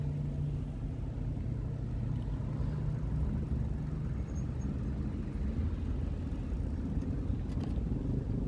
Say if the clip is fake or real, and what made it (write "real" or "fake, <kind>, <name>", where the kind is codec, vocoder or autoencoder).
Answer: real